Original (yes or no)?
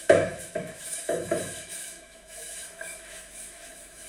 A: no